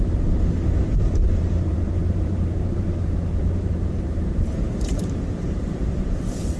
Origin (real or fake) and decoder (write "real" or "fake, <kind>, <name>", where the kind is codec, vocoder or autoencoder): fake, vocoder, BigVGAN v2